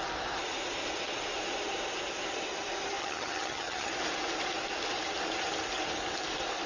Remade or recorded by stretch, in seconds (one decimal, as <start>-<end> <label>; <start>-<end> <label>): 0.0-3.0 recorded; 3.0-3.9 remade; 3.9-6.7 recorded